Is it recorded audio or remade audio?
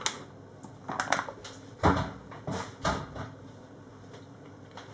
recorded